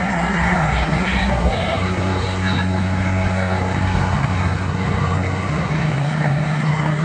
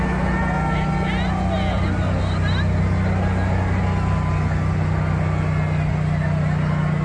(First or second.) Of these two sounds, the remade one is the first